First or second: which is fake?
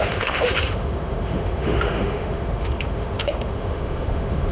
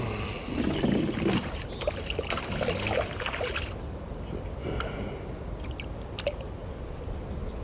first